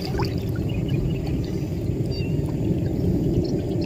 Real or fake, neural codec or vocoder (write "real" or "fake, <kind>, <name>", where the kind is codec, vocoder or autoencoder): real